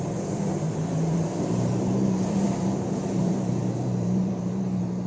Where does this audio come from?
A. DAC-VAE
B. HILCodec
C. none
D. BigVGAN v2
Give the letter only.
D